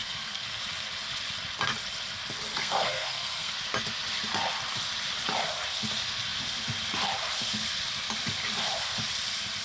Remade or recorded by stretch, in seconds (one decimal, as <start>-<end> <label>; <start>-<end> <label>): 0.0-0.6 remade; 0.6-2.5 recorded; 2.5-3.5 remade; 3.5-9.6 recorded